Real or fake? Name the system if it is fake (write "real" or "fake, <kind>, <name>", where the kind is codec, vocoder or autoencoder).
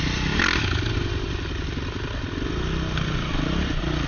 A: real